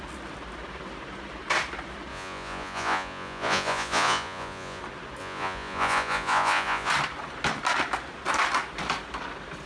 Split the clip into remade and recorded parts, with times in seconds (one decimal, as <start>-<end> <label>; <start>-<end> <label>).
0.0-2.1 recorded; 2.1-4.8 remade; 4.8-5.2 recorded; 5.2-6.9 remade; 6.9-9.7 recorded